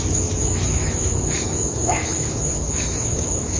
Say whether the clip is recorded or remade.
remade